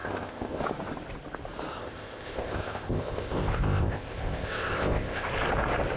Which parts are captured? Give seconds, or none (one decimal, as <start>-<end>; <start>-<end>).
0.6-1.7; 5.3-6.0